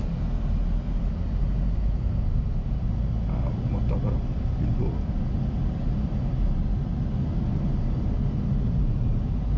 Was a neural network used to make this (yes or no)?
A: no